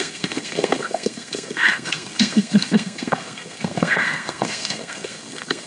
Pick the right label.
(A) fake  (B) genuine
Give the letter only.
A